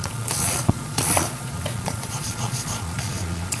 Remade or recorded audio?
remade